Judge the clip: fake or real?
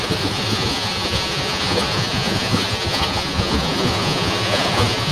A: fake